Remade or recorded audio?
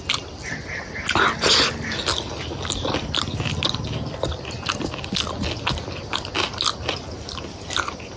recorded